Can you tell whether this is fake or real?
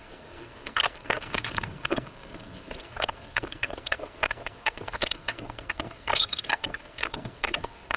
fake